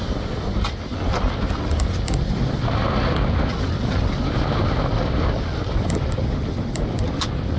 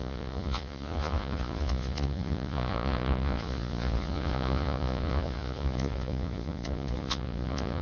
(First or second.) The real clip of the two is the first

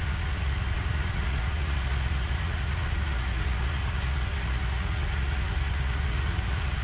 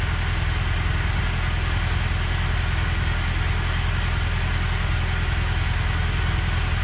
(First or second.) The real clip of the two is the second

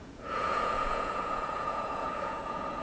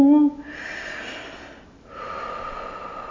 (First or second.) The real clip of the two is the second